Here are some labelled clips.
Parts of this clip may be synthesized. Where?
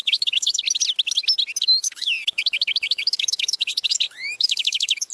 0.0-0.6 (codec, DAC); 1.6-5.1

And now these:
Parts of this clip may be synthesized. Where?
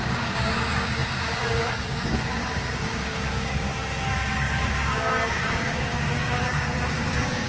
0.0-3.7 (codec, DAC); 4.3-7.5